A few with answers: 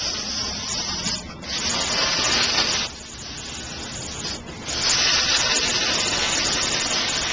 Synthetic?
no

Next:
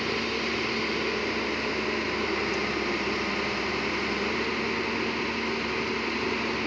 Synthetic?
no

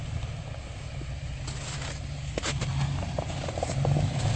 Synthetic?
no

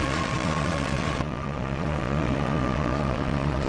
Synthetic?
yes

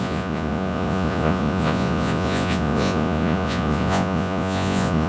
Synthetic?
yes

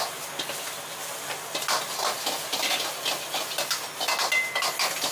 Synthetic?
no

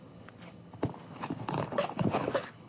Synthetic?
yes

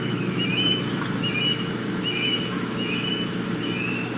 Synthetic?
yes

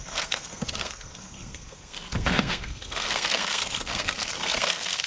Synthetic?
yes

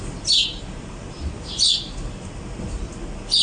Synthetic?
no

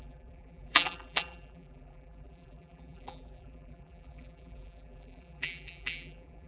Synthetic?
yes